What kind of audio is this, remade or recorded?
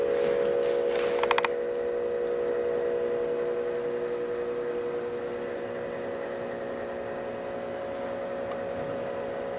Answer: recorded